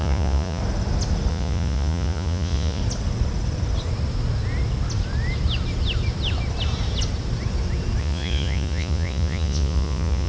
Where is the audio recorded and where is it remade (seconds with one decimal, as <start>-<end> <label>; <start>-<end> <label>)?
0.0-0.6 remade; 0.6-1.3 recorded; 1.3-2.8 remade; 2.8-8.0 recorded; 8.0-10.3 remade